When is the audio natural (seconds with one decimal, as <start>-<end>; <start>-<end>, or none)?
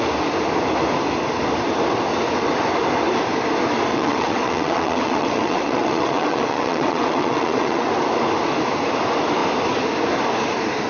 0.0-3.9; 7.9-10.9